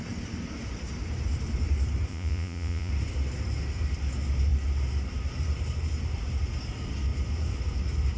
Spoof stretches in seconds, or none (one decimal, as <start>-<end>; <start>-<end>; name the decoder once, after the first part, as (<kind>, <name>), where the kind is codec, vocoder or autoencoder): 2.1-2.9 (vocoder, Vocos)